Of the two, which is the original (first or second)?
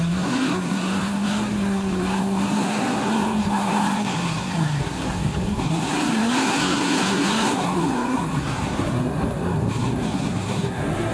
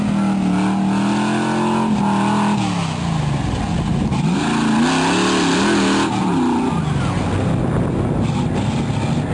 second